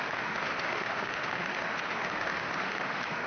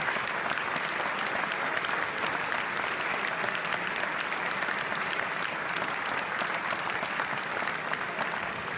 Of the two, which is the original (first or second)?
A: second